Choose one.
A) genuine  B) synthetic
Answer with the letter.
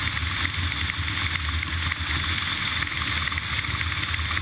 A